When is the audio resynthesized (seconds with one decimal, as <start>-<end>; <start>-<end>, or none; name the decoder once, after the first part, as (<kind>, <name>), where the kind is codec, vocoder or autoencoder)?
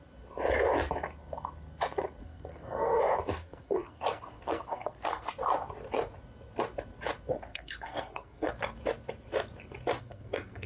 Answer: 2.2-3.0 (codec, SNAC); 3.4-5.3; 7.5-8.5; 10.0-10.7